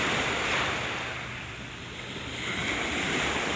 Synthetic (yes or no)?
yes